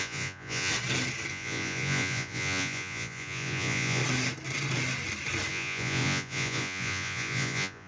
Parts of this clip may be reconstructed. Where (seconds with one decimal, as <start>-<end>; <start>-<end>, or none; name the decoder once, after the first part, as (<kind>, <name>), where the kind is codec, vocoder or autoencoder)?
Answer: 0.0-0.7 (vocoder, Vocos); 1.3-4.0; 5.5-7.9